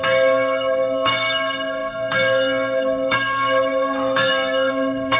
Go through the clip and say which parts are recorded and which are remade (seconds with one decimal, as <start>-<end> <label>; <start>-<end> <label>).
0.0-5.2 remade